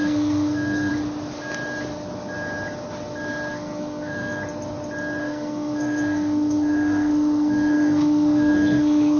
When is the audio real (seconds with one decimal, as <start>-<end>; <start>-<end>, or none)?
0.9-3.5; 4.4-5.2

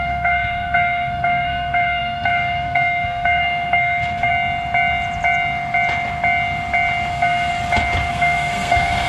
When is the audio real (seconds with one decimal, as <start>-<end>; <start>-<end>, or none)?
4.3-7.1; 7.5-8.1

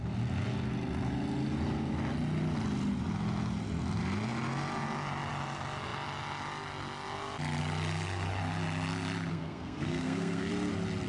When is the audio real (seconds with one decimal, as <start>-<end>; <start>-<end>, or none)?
0.0-9.3; 10.5-11.1

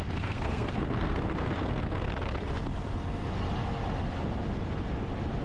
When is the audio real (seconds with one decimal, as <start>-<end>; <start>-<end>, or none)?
2.1-5.4

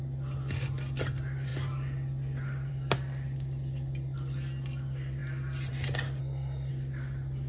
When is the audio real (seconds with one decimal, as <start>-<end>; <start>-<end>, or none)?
0.0-6.2; 6.7-7.5

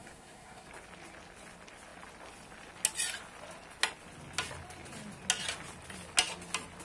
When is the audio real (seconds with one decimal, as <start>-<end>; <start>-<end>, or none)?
0.7-6.8

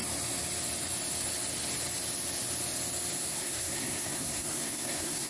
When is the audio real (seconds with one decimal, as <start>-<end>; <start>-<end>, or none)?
0.0-3.2

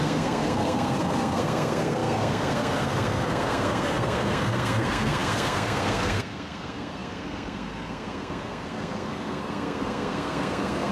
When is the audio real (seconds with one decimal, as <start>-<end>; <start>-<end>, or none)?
none